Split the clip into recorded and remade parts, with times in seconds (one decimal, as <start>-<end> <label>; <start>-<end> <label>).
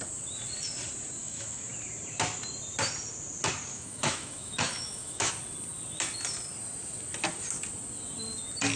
0.0-1.2 recorded; 1.2-1.7 remade; 1.7-3.7 recorded; 3.7-5.3 remade; 5.3-8.8 recorded